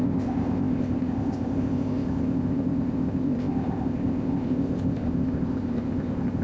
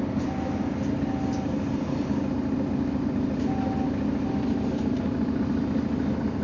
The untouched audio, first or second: second